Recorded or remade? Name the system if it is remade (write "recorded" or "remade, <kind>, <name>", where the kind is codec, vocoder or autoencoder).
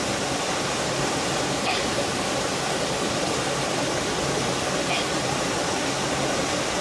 recorded